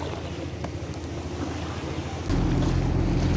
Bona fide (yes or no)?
yes